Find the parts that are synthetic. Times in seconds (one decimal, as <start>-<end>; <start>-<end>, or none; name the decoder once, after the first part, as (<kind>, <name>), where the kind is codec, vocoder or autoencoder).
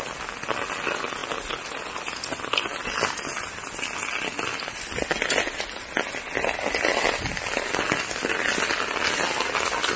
none